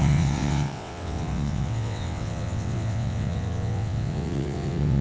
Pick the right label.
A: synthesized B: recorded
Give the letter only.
A